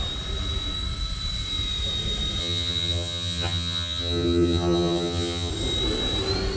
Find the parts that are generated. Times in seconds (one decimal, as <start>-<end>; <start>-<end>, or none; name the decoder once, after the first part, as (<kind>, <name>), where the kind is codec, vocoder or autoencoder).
2.4-5.5 (vocoder, HiFi-GAN)